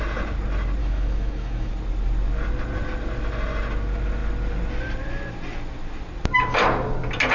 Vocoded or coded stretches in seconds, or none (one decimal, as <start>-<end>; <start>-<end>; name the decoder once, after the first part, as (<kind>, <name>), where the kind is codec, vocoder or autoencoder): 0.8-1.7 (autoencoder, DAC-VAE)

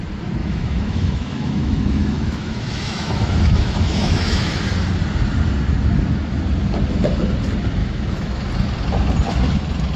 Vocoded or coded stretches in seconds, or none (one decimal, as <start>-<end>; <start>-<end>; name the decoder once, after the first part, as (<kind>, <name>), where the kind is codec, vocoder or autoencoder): 0.4-4.6 (autoencoder, DAC-VAE); 7.8-8.4

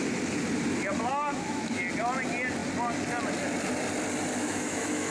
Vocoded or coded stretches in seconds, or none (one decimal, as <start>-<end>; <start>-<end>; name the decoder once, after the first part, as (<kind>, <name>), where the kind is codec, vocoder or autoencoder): 1.1-1.8 (autoencoder, DAC-VAE); 4.4-5.1